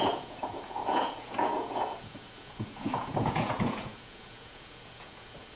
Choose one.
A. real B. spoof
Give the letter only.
B